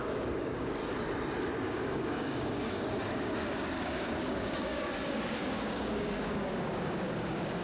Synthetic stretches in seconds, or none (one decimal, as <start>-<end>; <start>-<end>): 0.0-0.8; 1.4-7.6

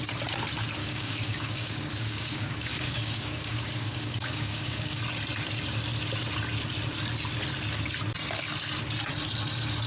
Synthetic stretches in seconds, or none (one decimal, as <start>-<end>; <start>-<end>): 0.8-5.0

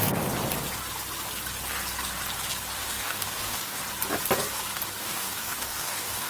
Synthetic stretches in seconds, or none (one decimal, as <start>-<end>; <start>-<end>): 2.8-3.8; 5.0-6.3

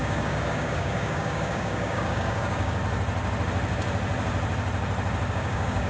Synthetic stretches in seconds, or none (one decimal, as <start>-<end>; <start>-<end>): 0.0-2.8; 5.3-5.9